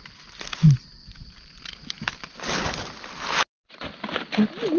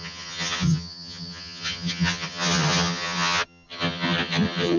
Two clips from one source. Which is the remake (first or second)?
second